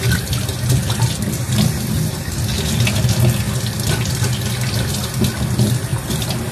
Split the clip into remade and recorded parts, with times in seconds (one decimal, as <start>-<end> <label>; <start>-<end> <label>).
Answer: 0.0-6.5 recorded